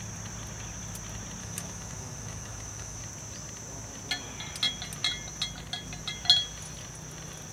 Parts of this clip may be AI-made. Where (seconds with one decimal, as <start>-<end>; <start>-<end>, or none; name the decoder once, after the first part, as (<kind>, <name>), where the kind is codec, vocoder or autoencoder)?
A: 1.4-3.0 (autoencoder, DAC-VAE)